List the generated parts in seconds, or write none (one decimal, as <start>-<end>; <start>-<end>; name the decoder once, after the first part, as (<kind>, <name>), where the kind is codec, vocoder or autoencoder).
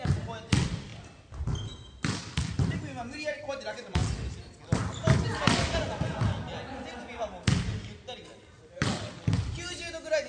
none